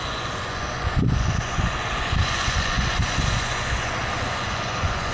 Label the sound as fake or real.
fake